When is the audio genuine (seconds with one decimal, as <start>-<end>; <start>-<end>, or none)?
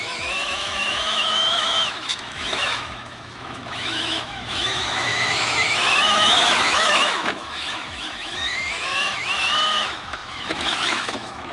none